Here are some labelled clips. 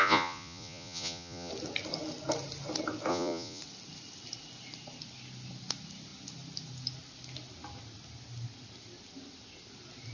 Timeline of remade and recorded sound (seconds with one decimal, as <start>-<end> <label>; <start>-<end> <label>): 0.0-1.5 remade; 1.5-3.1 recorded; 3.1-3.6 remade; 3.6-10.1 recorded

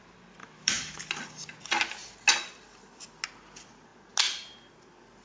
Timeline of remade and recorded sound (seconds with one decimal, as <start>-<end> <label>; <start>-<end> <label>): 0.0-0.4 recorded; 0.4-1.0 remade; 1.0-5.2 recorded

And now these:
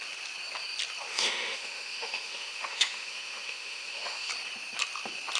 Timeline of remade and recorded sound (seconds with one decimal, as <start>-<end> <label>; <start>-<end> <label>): 0.0-1.1 recorded; 1.1-4.3 remade; 4.3-5.4 recorded

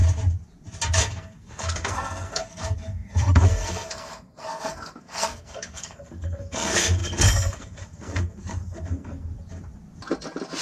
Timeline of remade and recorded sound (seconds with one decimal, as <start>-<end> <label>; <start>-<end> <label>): 0.0-1.0 recorded; 1.0-9.3 remade; 9.3-10.6 recorded

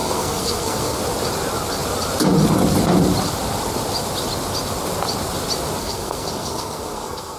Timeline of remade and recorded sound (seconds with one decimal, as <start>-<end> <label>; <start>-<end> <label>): 0.0-1.0 remade; 1.0-5.8 recorded; 5.8-7.4 remade